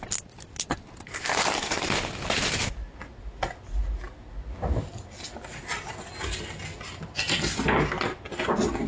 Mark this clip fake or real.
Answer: real